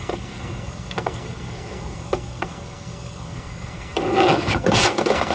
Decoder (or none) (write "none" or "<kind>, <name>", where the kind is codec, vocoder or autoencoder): codec, SNAC